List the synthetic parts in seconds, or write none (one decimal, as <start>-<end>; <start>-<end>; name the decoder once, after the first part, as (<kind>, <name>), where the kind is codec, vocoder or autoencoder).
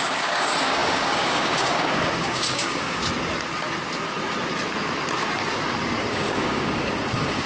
0.0-3.0 (codec, DAC); 6.1-7.5